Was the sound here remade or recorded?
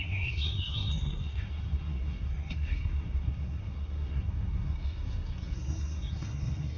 remade